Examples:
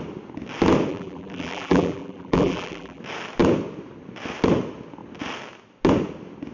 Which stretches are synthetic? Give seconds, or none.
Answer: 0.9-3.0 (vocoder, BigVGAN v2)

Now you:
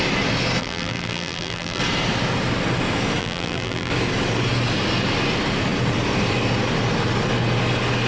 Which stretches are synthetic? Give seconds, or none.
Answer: 0.6-1.8 (vocoder, BigVGAN v2); 3.2-3.9

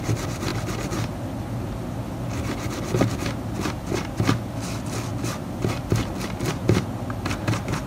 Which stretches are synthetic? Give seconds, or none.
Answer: none

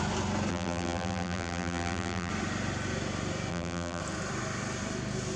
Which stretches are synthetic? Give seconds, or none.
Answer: 0.5-2.3 (vocoder, BigVGAN v2); 3.5-4.0

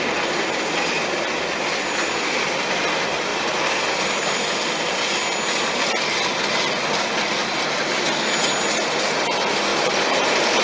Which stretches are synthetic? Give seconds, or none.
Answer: 9.7-10.6 (vocoder, BigVGAN v2)